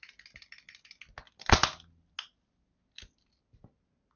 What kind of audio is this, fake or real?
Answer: real